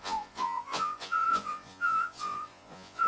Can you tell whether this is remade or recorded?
remade